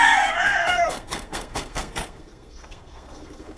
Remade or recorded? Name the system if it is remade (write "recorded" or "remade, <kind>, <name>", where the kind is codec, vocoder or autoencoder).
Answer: remade, codec, SNAC